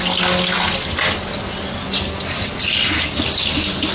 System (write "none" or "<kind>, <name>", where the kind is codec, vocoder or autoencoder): none